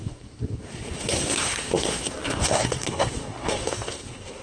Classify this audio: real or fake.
fake